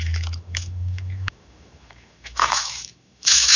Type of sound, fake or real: fake